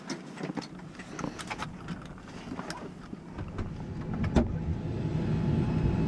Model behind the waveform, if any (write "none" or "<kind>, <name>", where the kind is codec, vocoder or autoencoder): none